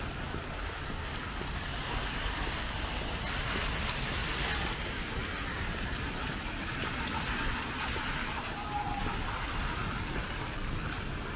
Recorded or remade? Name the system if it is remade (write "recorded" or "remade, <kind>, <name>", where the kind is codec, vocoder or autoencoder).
recorded